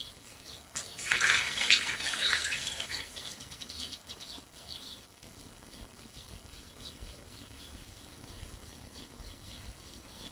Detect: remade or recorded remade